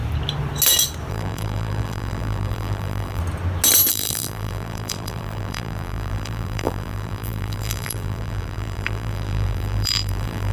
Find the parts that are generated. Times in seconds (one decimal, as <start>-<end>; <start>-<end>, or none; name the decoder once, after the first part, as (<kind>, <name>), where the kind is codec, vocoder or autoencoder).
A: 1.1-3.2 (vocoder, BigVGAN v2); 3.9-10.5